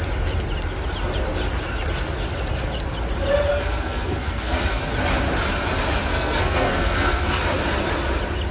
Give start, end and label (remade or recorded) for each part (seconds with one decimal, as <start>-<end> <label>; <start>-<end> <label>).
0.0-3.5 recorded; 3.5-4.9 remade; 4.9-6.1 recorded; 6.1-7.4 remade; 7.4-8.5 recorded